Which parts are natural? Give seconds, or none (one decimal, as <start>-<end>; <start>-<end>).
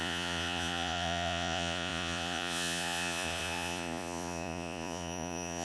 none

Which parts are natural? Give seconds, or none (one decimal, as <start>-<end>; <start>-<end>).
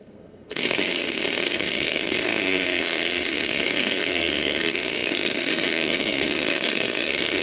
none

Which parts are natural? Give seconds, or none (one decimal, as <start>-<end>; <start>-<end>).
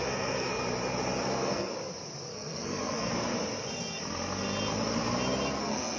0.5-1.2; 1.7-2.3; 3.1-5.6